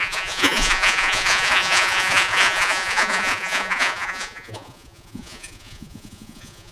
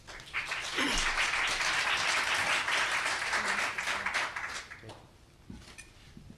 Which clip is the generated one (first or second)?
first